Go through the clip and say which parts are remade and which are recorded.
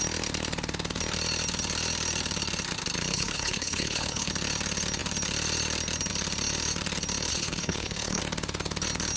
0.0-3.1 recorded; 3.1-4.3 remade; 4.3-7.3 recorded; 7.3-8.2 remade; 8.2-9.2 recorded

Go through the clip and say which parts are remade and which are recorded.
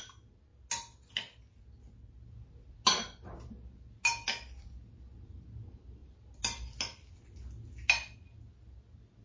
0.0-9.2 recorded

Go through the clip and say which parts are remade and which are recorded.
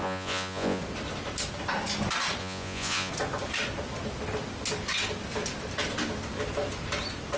0.0-0.8 remade; 0.8-2.4 recorded; 2.4-3.1 remade; 3.1-7.4 recorded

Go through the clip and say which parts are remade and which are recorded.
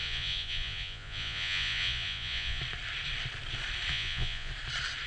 0.0-2.6 remade; 2.6-3.9 recorded; 3.9-4.5 remade; 4.5-5.1 recorded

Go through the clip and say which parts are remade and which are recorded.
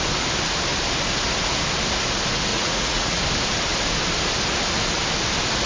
0.0-2.5 recorded; 2.5-3.2 remade; 3.2-5.7 recorded